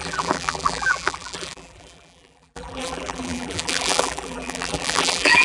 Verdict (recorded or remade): remade